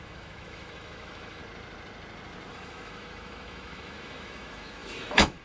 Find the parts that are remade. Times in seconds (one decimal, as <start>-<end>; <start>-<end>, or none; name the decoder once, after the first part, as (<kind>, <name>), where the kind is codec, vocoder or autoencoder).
0.0-1.4 (autoencoder, DAC-VAE); 2.5-5.4